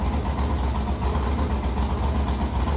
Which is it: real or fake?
real